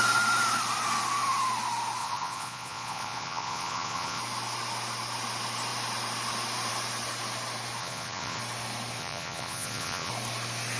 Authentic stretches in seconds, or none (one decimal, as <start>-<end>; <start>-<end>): 0.0-2.0; 4.2-7.8; 8.4-9.0; 10.1-10.8